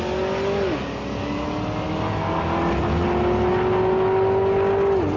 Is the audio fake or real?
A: real